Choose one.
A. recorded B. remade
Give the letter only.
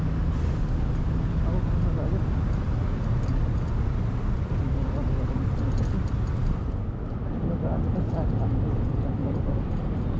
A